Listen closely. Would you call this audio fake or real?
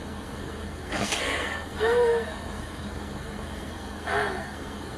fake